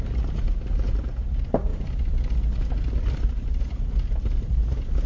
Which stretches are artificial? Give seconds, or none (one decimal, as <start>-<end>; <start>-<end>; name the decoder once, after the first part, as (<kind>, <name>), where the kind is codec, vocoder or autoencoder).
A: none